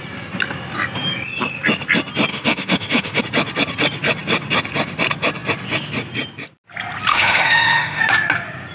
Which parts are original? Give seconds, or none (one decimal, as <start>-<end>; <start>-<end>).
0.0-2.3; 3.2-7.1; 8.0-8.7